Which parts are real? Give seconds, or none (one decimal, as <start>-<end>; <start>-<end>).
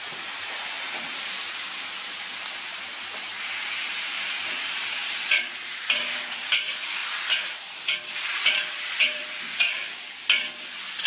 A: 7.0-8.1; 9.8-11.1